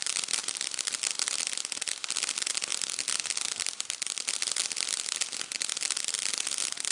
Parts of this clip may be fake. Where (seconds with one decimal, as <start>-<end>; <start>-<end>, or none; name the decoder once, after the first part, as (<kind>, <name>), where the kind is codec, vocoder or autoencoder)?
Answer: none